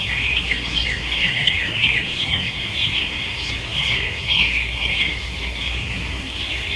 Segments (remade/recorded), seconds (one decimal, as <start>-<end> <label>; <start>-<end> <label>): 0.0-6.8 remade